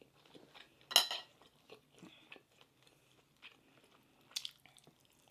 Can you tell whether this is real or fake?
real